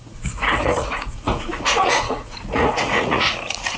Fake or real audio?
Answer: fake